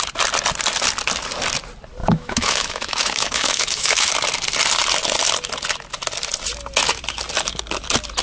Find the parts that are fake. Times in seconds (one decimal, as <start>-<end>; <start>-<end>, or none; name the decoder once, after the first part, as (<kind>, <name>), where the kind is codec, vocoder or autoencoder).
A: 2.0-4.1 (autoencoder, DAC-VAE)